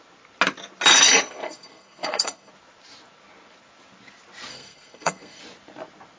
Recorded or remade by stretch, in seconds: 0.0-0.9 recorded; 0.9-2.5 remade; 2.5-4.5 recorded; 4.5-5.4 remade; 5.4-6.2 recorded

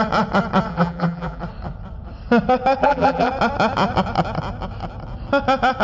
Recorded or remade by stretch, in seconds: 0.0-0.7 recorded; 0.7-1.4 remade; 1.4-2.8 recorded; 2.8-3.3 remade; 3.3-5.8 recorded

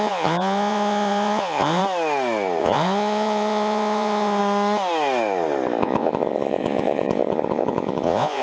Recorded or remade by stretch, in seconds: 0.0-1.8 remade; 1.8-2.6 recorded; 2.6-4.4 remade; 4.4-5.8 recorded; 5.8-8.4 remade

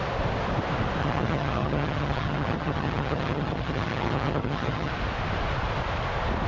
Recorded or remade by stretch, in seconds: 0.0-1.0 recorded; 1.0-4.9 remade; 4.9-6.5 recorded

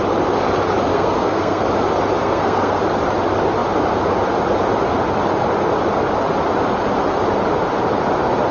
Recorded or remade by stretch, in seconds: 0.0-0.9 recorded; 0.9-1.6 remade; 1.6-2.2 recorded; 2.2-2.8 remade; 2.8-8.5 recorded

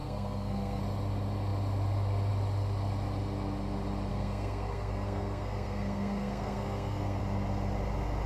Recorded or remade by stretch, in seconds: 0.0-0.8 remade; 0.8-4.1 recorded; 4.1-7.2 remade; 7.2-8.3 recorded

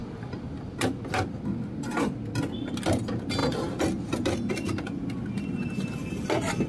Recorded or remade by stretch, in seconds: 0.0-6.7 recorded

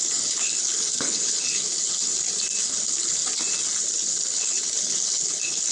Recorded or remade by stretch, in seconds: 0.0-2.1 remade; 2.1-2.6 recorded; 2.6-3.2 remade; 3.2-4.2 recorded; 4.2-5.7 remade